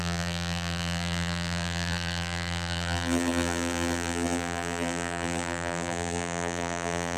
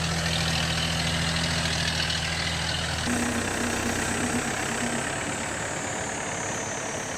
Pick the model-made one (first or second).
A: first